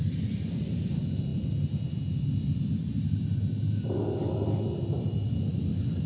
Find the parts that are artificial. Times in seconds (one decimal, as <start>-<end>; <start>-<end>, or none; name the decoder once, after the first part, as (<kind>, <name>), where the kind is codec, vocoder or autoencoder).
0.0-1.3 (vocoder, BigVGAN v2); 5.0-6.1